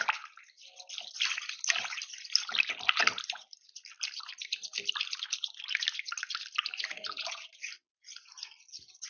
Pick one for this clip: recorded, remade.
recorded